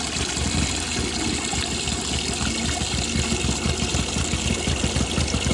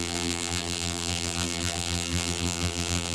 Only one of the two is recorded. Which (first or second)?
first